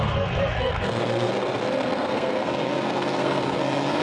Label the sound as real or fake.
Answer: fake